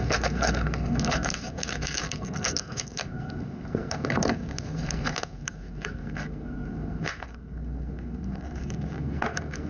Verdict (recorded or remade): remade